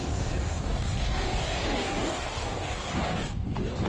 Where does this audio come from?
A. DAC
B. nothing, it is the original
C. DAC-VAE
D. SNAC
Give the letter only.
A